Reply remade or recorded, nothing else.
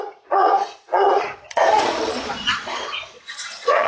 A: remade